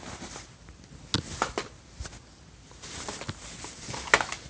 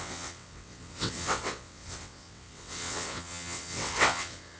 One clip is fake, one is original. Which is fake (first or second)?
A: second